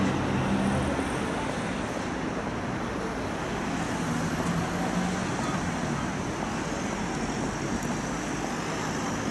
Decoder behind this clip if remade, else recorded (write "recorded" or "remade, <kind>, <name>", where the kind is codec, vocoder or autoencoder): recorded